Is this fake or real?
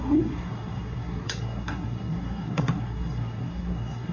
fake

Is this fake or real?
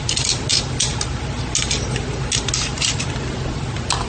real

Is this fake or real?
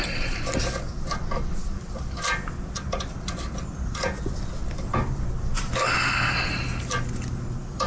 real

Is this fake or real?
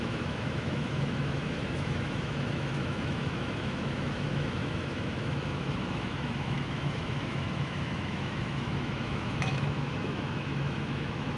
fake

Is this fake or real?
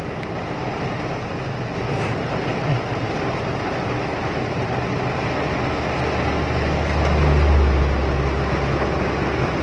real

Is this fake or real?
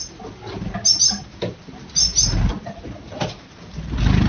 real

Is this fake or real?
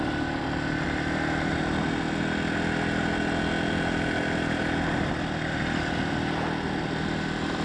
real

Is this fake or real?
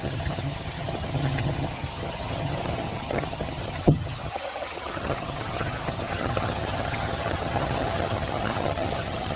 fake